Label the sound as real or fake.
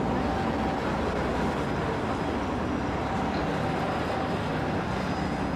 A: real